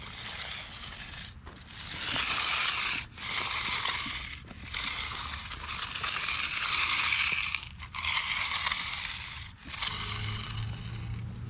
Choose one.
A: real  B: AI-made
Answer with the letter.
A